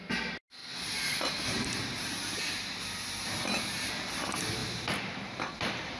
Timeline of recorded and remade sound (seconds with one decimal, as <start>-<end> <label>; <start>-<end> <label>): 0.0-4.6 recorded; 4.6-6.0 remade